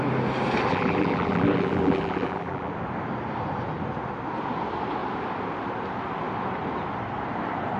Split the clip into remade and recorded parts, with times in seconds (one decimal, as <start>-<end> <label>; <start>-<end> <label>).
0.0-0.7 recorded; 0.7-2.7 remade; 2.7-7.8 recorded